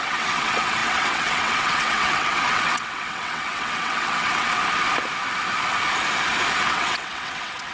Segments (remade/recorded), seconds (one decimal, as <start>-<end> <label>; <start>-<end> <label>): 0.0-4.6 remade; 4.6-6.6 recorded; 6.6-7.7 remade